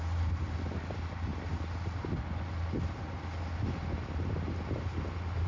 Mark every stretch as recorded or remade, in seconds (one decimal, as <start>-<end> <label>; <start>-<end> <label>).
0.0-5.5 recorded